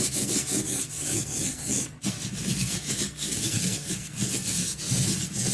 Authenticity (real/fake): fake